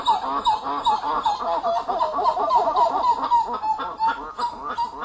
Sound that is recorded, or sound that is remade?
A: recorded